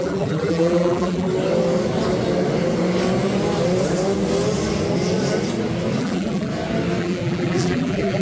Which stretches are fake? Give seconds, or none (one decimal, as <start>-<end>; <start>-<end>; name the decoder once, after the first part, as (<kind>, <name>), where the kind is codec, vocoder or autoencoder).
0.0-1.3 (vocoder, BigVGAN v2); 6.0-6.5; 7.0-8.2